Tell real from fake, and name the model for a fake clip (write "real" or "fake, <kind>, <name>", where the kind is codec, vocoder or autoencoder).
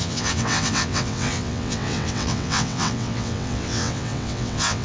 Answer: fake, vocoder, WaveNeXt